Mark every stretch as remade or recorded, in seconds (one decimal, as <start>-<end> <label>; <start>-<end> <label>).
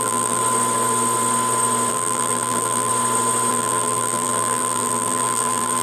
0.0-0.4 remade; 0.4-1.9 recorded; 1.9-2.9 remade; 2.9-3.5 recorded; 3.5-5.8 remade